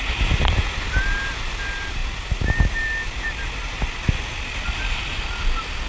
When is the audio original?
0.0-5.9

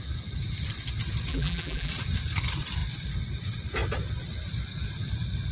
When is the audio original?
0.0-1.3; 1.9-5.5

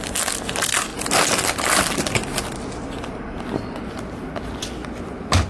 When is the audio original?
0.0-5.5

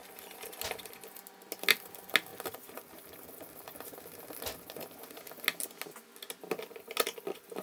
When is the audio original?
0.5-7.6

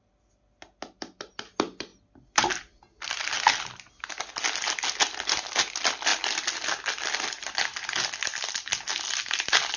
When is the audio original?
0.0-1.9; 2.8-6.1; 7.6-9.8

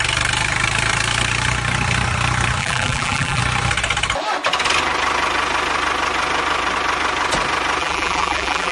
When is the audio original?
0.0-2.6; 3.4-7.8

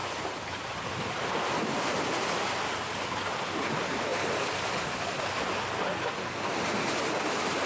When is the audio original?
2.4-4.1; 5.2-7.7

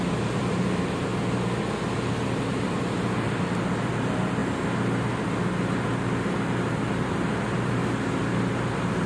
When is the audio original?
1.1-1.9; 4.4-6.9; 7.8-8.7